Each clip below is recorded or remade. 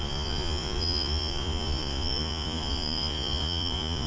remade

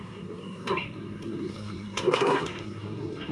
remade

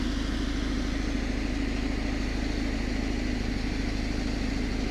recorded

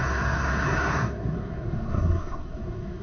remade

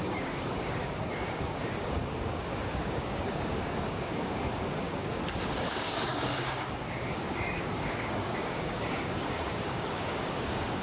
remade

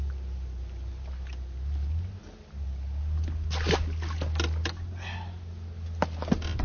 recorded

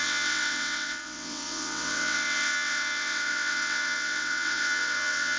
remade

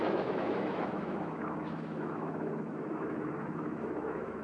remade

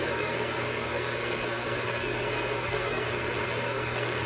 remade